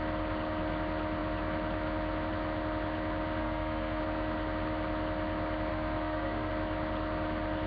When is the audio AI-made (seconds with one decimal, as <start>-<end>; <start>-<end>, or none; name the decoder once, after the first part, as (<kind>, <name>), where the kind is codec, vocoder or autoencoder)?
3.4-4.0 (codec, SNAC); 5.7-6.5